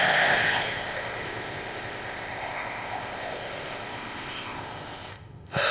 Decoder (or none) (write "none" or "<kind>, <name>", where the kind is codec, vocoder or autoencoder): codec, ZipCodec